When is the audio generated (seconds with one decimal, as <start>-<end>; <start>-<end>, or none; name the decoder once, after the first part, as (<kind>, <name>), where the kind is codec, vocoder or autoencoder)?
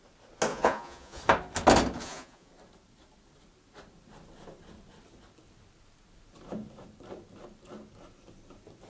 0.5-1.2 (vocoder, Vocos); 2.0-2.5